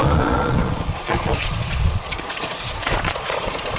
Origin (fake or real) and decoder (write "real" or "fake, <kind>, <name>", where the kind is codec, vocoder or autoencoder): fake, vocoder, Vocos